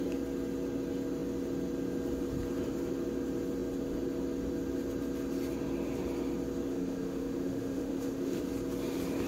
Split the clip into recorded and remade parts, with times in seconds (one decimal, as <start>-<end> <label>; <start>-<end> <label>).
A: 0.0-6.7 recorded; 6.7-8.4 remade; 8.4-9.3 recorded